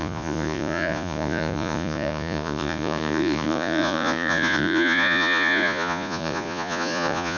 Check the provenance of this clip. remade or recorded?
remade